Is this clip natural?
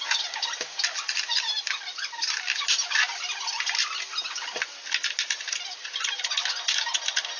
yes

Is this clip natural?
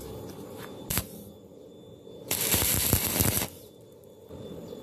no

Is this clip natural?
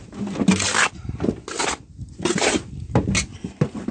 yes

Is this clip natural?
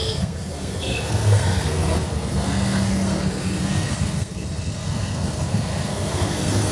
no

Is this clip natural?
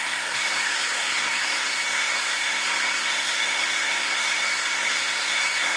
no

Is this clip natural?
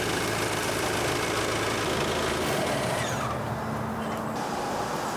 yes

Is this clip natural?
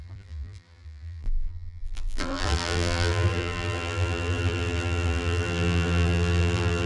no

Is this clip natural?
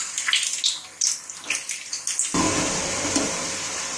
yes